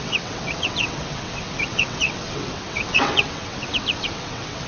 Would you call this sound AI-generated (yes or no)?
yes